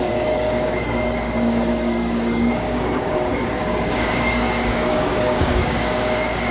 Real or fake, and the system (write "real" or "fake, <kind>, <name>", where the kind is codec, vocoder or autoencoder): fake, codec, DAC